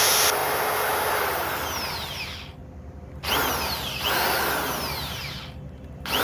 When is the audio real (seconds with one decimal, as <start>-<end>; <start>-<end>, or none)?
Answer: 0.0-6.2

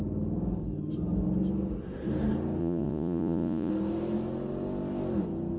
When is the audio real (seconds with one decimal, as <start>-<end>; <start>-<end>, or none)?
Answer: 0.0-2.6; 3.7-5.6

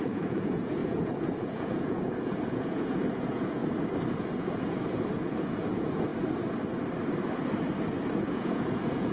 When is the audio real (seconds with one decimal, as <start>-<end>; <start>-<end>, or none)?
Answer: 3.6-4.1; 6.1-8.1

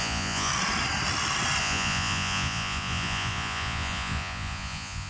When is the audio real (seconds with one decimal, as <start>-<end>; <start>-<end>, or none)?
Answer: 0.5-1.6